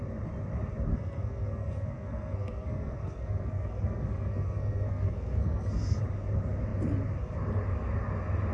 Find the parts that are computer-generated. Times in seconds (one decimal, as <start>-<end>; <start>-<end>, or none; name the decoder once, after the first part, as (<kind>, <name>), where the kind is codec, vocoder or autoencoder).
0.9-6.0 (codec, SNAC)